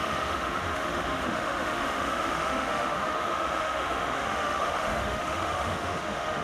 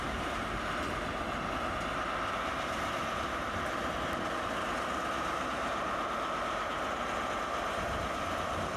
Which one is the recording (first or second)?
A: second